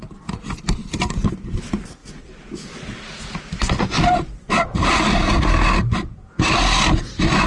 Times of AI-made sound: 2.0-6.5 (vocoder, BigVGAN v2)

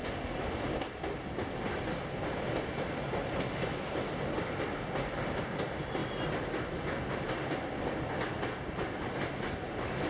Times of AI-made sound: none

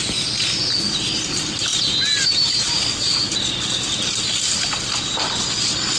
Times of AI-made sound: 1.7-2.9 (vocoder, BigVGAN v2)

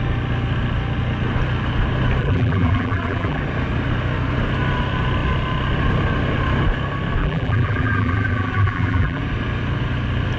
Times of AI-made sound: 2.2-3.4 (vocoder, BigVGAN v2); 7.2-9.2

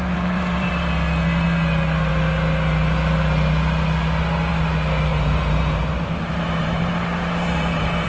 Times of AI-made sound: 0.0-0.7 (vocoder, BigVGAN v2); 5.1-8.1